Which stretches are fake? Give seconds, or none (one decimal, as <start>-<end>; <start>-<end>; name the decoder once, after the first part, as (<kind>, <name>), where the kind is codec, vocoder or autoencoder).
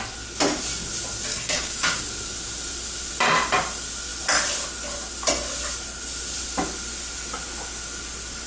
1.3-2.0 (codec, DAC)